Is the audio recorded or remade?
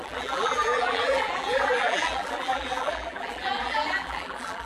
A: remade